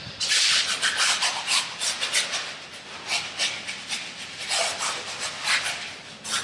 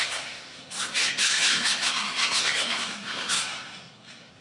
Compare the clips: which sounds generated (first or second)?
second